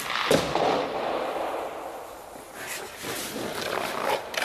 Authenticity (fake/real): real